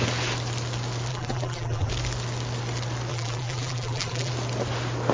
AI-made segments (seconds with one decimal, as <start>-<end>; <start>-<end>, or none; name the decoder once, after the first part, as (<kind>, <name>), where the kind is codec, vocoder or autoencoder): 1.1-1.9 (vocoder, BigVGAN v2); 3.1-4.3